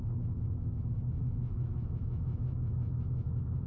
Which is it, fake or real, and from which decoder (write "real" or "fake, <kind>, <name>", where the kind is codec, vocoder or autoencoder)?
fake, autoencoder, DAC-VAE